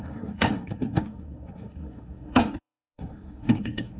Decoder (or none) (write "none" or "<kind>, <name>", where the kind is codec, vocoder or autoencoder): codec, SNAC